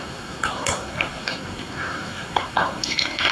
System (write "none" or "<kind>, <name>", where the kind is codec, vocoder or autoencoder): codec, SNAC